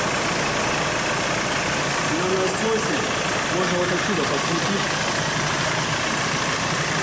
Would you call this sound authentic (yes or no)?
yes